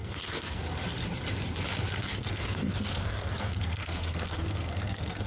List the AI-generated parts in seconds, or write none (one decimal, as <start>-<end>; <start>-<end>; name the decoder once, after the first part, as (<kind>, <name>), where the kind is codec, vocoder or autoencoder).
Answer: 0.0-0.6 (codec, SNAC); 2.0-5.3